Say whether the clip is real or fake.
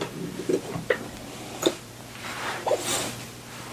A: fake